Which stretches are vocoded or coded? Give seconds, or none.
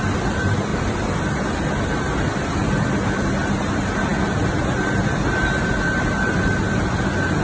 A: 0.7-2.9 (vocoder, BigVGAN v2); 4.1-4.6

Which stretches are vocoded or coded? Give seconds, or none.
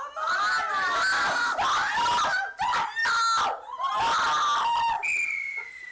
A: none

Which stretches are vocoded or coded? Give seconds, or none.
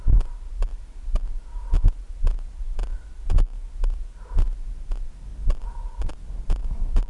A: none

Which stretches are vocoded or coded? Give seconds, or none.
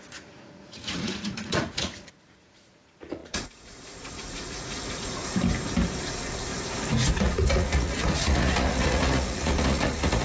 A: 0.0-5.2 (vocoder, Vocos); 6.1-6.5; 7.1-10.2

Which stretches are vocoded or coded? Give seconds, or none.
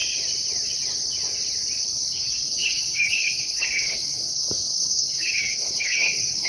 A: 2.1-6.5 (codec, HILCodec)